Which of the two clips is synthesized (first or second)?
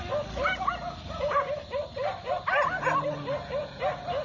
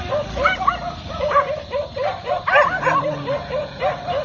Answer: second